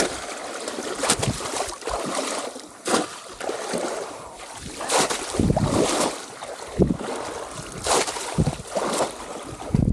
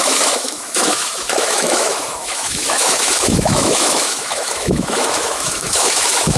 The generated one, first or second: second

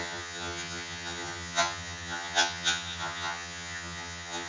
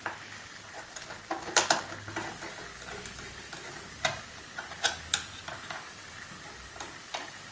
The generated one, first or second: first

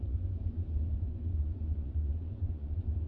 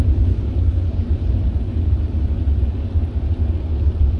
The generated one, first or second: first